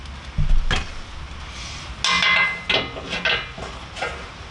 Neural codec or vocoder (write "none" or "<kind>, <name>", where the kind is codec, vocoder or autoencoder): none